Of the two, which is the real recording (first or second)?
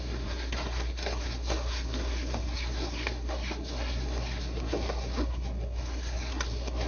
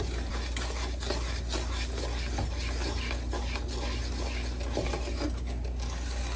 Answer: second